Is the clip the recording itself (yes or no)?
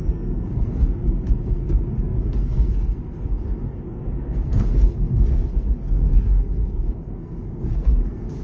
no